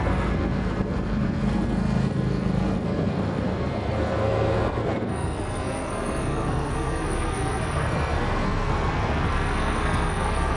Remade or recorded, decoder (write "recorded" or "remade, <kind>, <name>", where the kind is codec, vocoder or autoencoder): remade, codec, SNAC